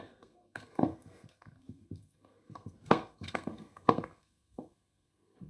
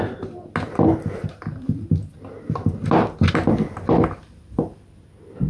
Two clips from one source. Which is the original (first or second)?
second